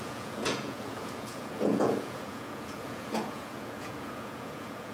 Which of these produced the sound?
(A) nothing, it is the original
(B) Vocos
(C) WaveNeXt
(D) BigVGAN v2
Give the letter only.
B